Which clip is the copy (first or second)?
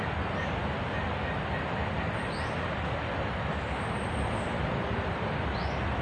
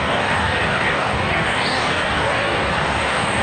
second